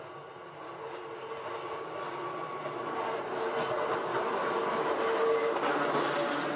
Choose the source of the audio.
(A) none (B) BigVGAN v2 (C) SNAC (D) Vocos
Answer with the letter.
A